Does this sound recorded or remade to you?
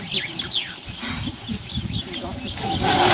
recorded